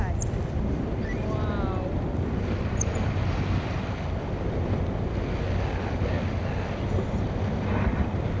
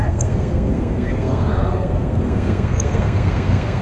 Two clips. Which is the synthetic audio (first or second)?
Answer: second